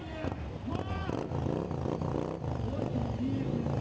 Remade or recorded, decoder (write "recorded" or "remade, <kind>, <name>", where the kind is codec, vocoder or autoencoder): recorded